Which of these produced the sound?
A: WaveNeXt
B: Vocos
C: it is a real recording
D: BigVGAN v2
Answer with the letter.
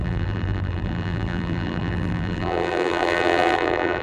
D